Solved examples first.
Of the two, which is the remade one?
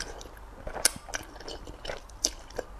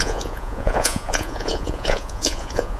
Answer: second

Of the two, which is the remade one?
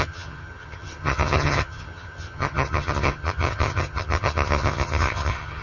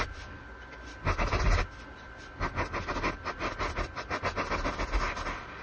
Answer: first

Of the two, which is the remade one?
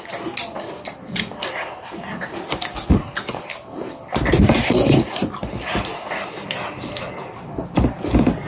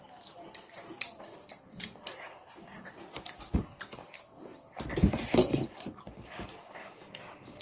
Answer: second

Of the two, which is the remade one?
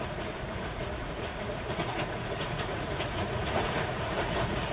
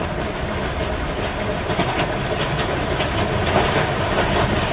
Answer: first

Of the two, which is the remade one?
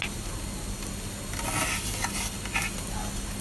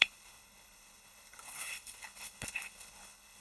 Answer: second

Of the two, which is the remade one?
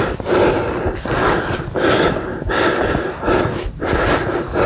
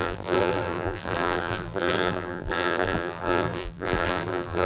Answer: second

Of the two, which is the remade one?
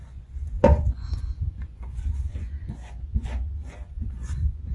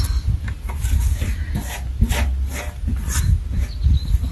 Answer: first